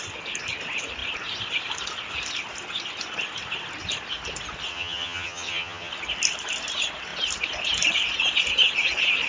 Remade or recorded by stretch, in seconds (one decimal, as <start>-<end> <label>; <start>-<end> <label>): 0.0-4.7 recorded; 4.7-5.9 remade; 5.9-9.3 recorded